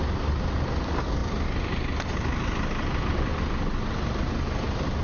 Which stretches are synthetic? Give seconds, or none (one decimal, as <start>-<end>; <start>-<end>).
none